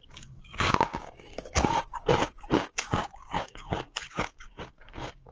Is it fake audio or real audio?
fake